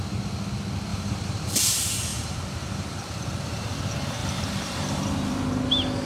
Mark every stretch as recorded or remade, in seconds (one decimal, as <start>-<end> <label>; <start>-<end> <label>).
0.0-0.9 recorded; 0.9-1.6 remade; 1.6-2.1 recorded; 2.1-3.8 remade; 3.8-4.2 recorded; 4.2-5.0 remade; 5.0-6.1 recorded

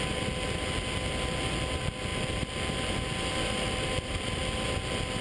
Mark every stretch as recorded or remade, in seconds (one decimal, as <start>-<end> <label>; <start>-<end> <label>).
0.0-3.3 recorded; 3.3-4.4 remade; 4.4-5.2 recorded

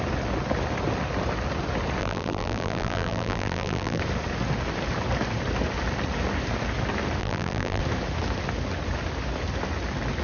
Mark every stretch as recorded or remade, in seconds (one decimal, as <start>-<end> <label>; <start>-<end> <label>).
0.0-2.0 recorded; 2.0-4.0 remade; 4.0-7.2 recorded; 7.2-7.8 remade; 7.8-10.2 recorded

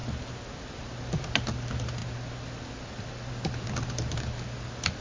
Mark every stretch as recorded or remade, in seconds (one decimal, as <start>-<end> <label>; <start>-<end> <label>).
0.0-5.0 recorded

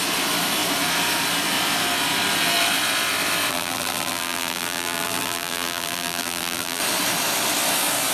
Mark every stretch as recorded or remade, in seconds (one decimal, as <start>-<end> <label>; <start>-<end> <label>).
0.0-3.5 recorded; 3.5-6.8 remade; 6.8-8.1 recorded

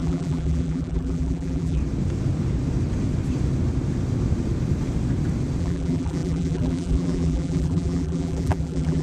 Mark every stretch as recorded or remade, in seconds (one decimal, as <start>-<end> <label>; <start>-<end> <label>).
0.0-1.8 remade; 1.8-5.6 recorded; 5.6-9.0 remade